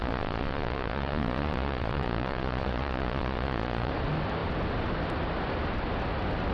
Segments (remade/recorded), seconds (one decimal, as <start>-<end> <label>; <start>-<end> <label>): 0.0-3.9 remade; 3.9-6.5 recorded

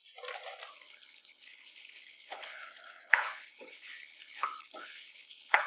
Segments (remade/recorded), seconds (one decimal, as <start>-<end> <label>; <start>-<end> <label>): 0.0-0.7 recorded; 0.7-5.7 remade

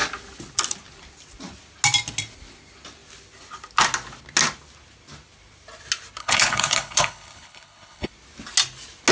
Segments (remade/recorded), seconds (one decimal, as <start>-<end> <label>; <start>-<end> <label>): 0.0-6.2 recorded; 6.2-8.1 remade; 8.1-9.1 recorded

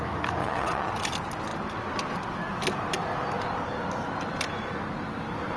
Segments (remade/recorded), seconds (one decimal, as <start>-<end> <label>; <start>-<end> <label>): 0.0-0.4 recorded; 0.4-0.9 remade; 0.9-5.6 recorded

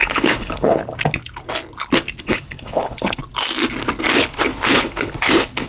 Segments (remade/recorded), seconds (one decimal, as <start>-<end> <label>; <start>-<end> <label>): 0.0-0.8 remade; 0.8-2.2 recorded; 2.2-3.2 remade; 3.2-4.1 recorded; 4.1-5.7 remade

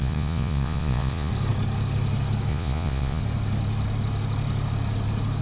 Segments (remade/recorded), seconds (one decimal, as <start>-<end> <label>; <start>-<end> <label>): 0.0-1.3 remade; 1.3-2.5 recorded; 2.5-3.2 remade; 3.2-5.4 recorded

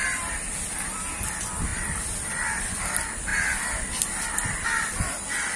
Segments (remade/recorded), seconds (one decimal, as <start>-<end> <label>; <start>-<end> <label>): 0.0-5.6 recorded